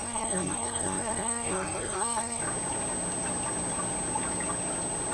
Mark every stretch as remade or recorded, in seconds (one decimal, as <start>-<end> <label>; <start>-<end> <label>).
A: 0.0-2.4 remade; 2.4-5.1 recorded